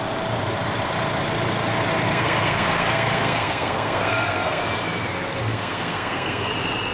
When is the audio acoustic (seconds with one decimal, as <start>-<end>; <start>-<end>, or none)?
0.0-2.1; 4.6-5.4; 6.5-6.9